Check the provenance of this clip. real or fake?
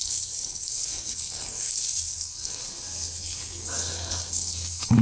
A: fake